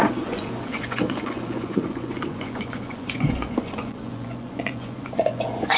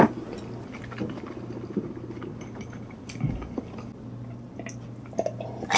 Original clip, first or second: second